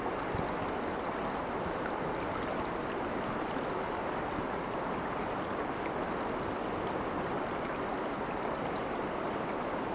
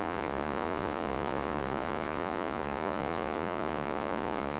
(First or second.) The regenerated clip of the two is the second